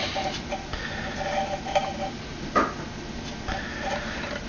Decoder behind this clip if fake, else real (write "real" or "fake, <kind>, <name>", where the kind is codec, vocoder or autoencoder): real